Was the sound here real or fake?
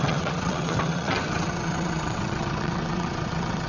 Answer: fake